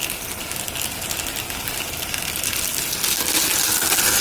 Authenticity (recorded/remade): recorded